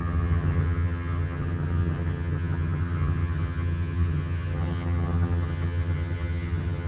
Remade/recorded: remade